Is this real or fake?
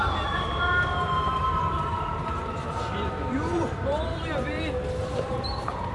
fake